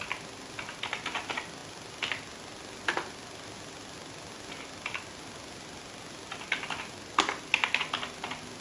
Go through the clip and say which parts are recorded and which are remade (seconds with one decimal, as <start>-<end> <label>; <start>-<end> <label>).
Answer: 0.0-8.6 recorded